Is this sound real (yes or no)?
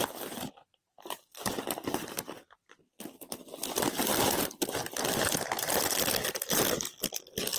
yes